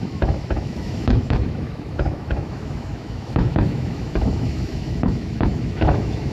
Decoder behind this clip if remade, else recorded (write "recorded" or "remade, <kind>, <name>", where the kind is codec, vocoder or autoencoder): remade, autoencoder, DAC-VAE